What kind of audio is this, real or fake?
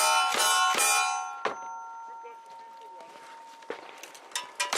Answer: real